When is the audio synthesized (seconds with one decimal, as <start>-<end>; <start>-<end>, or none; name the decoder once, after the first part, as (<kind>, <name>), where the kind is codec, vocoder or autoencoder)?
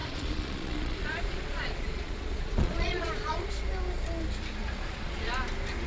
0.0-3.5 (vocoder, Vocos); 4.6-5.3